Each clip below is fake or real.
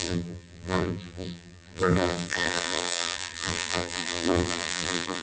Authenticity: fake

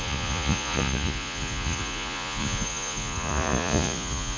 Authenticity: fake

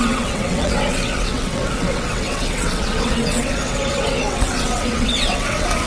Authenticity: fake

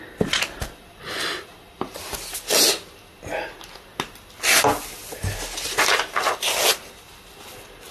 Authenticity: real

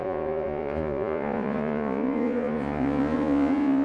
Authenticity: fake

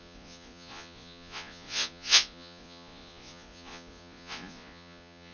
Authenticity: fake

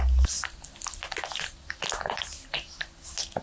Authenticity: real